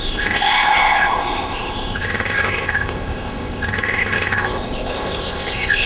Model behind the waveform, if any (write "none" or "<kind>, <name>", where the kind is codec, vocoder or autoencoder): codec, ZipCodec